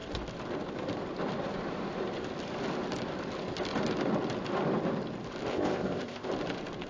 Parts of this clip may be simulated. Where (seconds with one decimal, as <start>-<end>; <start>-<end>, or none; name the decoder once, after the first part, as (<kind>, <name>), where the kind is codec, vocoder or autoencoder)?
5.5-6.3 (codec, ZipCodec)